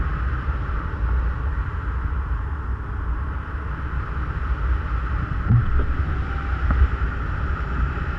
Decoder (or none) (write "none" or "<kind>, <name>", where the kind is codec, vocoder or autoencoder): none